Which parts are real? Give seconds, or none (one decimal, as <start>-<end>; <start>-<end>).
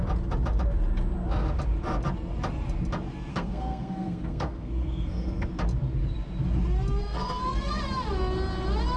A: 0.0-3.3; 5.5-7.0; 7.8-9.0